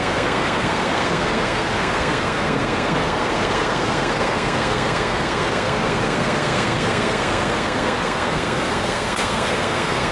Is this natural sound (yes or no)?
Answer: no